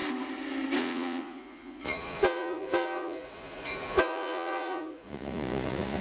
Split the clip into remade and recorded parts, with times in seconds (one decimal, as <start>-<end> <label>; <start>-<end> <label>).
0.0-0.8 recorded; 0.8-6.0 remade